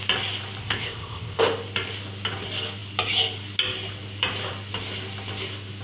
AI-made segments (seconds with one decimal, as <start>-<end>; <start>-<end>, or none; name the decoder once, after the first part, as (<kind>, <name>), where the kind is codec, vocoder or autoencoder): 0.6-1.4 (codec, ZipCodec)